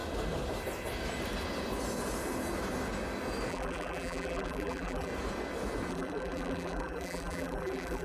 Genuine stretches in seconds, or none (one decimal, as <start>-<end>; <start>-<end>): 0.0-3.5; 5.1-5.9